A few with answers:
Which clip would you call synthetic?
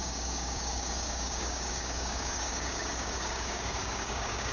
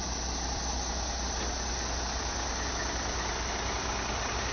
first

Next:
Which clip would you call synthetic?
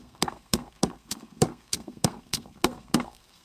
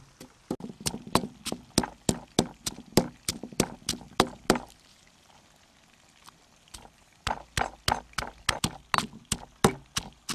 first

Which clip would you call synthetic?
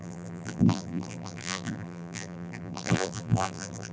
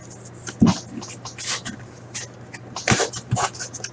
first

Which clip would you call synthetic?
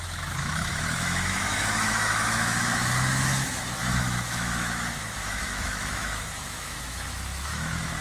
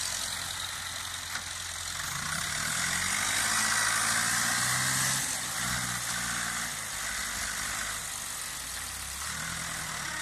first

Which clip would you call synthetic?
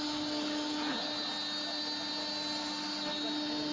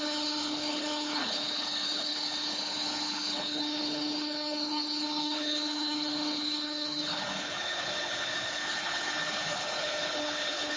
second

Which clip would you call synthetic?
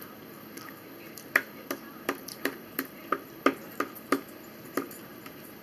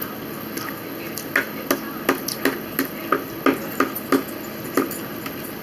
first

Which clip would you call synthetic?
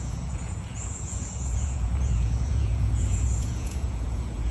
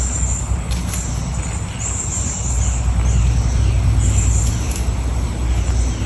first